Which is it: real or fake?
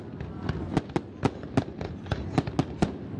real